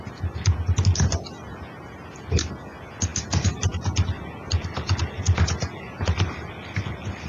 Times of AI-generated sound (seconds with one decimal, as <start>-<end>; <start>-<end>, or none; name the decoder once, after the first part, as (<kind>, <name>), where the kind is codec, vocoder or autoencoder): none